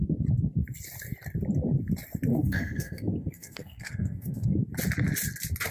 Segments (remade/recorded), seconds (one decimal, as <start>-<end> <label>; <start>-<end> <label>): 0.0-2.3 recorded; 2.3-4.6 remade; 4.6-5.7 recorded